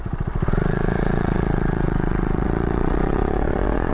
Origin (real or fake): fake